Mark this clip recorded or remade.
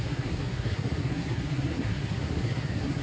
remade